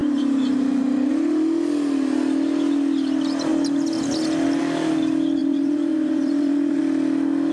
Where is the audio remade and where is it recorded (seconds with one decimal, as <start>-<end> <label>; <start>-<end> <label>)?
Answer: 0.0-1.1 remade; 1.1-5.4 recorded; 5.4-6.8 remade; 6.8-7.5 recorded